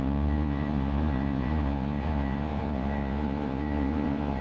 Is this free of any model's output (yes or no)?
no